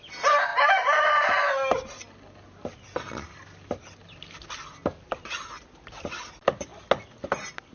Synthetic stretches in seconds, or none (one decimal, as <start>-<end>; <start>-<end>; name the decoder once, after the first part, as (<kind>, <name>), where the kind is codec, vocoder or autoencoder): none

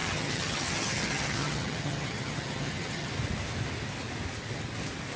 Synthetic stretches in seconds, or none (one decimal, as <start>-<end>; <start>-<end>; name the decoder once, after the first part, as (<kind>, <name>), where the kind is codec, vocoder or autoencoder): 0.0-3.1 (vocoder, HiFi-GAN)

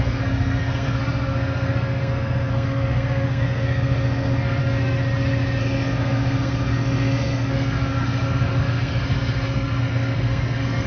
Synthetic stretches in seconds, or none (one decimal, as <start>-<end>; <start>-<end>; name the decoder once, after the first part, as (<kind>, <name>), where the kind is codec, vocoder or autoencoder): 0.0-4.6 (codec, SNAC); 5.6-10.9

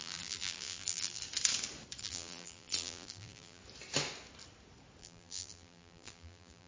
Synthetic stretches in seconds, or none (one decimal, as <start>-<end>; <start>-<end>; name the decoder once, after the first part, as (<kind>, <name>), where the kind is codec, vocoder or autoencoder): 0.0-1.2 (vocoder, BigVGAN v2); 2.0-3.6; 5.0-6.7

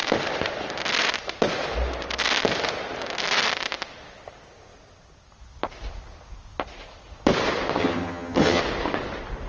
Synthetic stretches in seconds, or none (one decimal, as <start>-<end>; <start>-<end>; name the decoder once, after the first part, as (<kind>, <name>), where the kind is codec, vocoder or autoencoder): 7.8-8.6 (vocoder, HiFi-GAN)

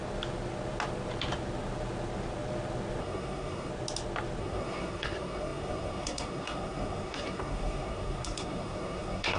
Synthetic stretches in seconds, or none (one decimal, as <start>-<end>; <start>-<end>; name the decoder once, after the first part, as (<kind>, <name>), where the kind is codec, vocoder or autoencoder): 3.0-3.7 (codec, SNAC); 4.4-9.4

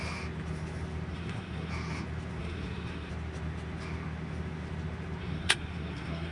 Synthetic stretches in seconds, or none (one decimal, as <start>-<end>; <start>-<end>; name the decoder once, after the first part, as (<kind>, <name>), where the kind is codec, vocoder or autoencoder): 1.1-1.7 (codec, SNAC); 2.4-3.1; 5.2-6.3